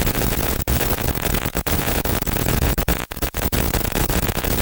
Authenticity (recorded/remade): remade